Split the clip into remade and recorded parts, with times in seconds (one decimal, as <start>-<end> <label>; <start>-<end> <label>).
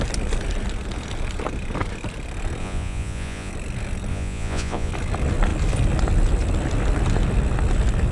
0.0-2.6 recorded; 2.6-3.5 remade; 3.5-4.1 recorded; 4.1-4.9 remade; 4.9-8.1 recorded